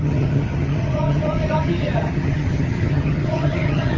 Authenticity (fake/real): fake